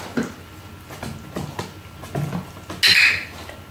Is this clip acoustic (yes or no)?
yes